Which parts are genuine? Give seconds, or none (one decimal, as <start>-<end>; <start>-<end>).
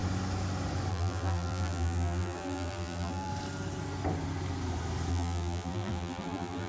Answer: 0.0-0.9; 3.3-5.1